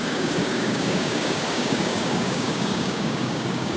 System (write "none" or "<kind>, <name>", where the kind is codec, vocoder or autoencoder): codec, DAC